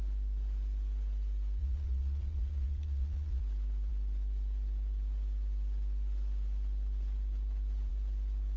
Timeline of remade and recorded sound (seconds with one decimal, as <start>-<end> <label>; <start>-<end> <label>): 0.0-1.6 recorded; 1.6-3.4 remade; 3.4-8.6 recorded